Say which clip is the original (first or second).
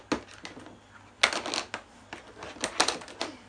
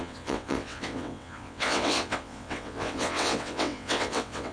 first